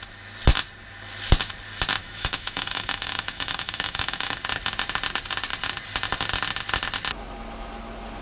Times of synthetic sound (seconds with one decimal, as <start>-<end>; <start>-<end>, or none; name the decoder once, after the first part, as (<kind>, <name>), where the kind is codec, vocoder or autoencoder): 2.0-4.4 (autoencoder, DAC-VAE)